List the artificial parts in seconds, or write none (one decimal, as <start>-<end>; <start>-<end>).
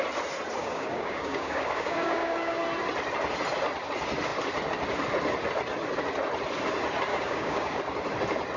0.6-2.6; 7.1-7.8